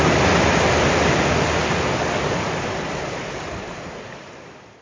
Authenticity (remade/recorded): recorded